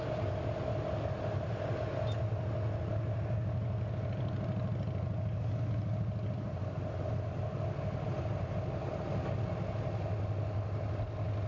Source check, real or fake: real